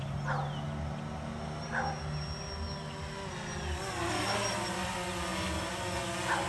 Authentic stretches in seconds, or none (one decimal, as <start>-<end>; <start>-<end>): 0.0-6.5